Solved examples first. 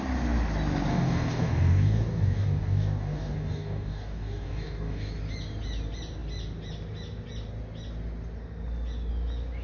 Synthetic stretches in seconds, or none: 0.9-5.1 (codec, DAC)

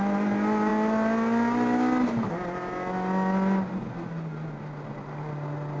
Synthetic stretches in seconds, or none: none

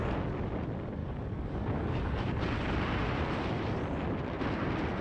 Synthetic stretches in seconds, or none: 1.0-2.6 (codec, DAC)

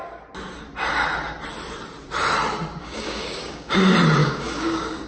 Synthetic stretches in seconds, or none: 2.8-3.8 (codec, DAC); 4.2-5.1

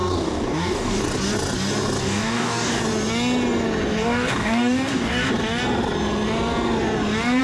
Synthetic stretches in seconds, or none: 0.0-1.0 (codec, DAC); 2.0-2.8; 4.0-5.3

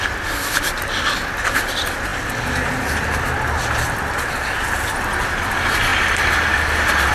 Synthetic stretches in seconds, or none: none

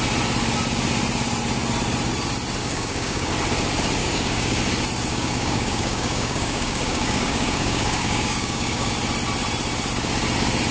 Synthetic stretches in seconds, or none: 2.6-3.3 (codec, DAC); 4.0-4.6; 5.1-8.9

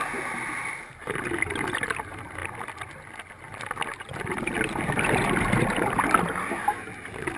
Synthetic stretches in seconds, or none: none